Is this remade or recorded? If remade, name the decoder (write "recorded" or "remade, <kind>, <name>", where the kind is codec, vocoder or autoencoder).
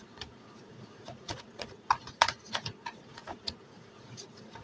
remade, vocoder, Vocos